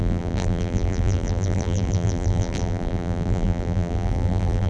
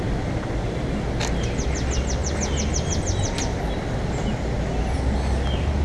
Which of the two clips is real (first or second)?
second